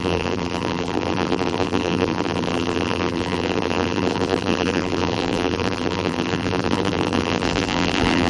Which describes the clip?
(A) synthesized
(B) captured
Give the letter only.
A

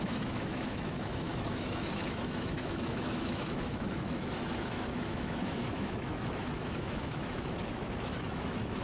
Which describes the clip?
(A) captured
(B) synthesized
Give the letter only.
B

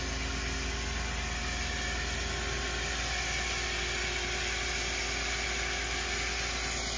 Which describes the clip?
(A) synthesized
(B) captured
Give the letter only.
B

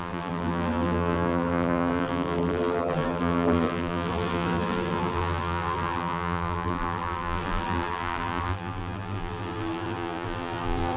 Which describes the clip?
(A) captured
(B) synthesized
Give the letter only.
B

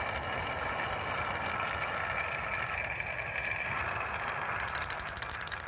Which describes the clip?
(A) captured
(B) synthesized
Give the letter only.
A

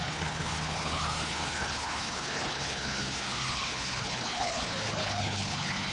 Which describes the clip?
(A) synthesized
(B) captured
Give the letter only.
A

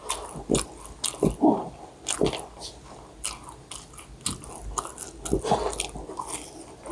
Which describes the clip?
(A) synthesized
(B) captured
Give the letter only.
B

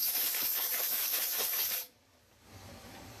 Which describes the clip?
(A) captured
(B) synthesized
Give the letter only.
B